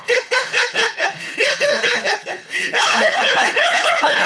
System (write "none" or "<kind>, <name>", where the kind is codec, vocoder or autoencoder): codec, HILCodec